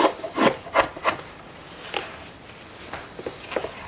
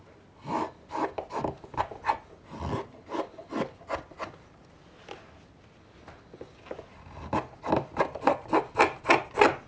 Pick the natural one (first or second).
second